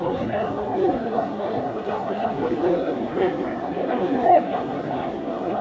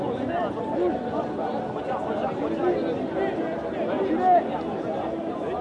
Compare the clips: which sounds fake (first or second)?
first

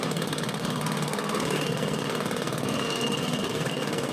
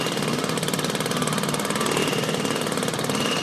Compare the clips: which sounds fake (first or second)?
first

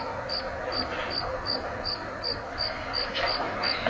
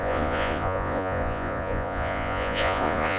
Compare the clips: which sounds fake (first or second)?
second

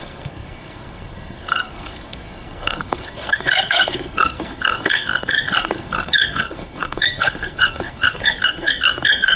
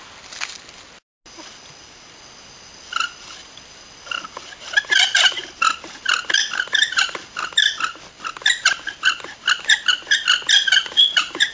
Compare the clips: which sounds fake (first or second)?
first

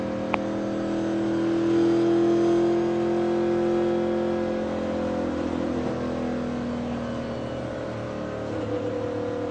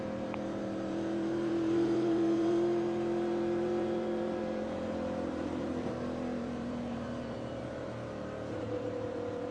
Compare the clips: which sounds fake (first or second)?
second